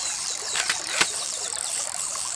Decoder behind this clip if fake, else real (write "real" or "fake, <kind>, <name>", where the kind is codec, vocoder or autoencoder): fake, vocoder, BigVGAN v2